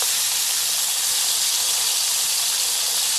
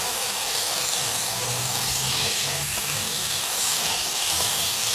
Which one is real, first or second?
first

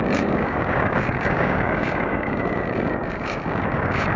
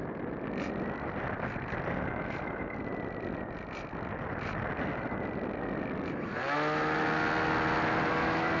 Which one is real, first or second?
second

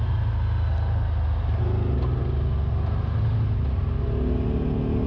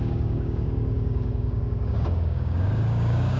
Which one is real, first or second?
first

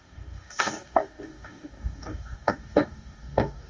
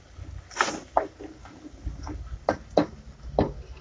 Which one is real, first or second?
second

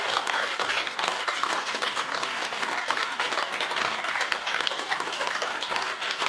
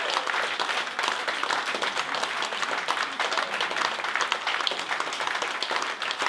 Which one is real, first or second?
second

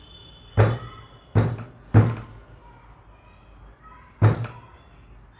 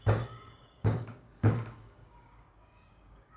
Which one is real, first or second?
first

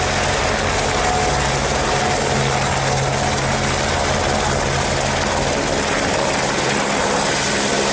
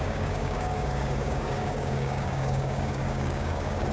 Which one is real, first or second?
first